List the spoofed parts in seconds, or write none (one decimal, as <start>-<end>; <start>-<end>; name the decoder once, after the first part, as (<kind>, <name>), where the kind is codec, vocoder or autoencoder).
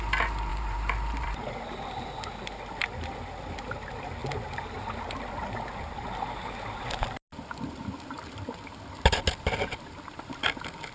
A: 0.5-1.7 (vocoder, BigVGAN v2)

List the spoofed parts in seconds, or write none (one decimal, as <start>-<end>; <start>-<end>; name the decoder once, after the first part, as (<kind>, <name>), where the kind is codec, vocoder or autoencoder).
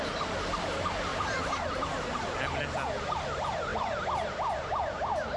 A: 1.1-1.7 (vocoder, BigVGAN v2); 3.7-4.8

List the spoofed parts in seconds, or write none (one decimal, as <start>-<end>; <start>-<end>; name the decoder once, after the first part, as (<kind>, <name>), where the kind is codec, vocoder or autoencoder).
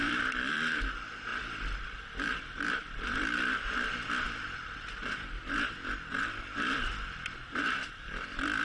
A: 0.0-8.6 (vocoder, BigVGAN v2)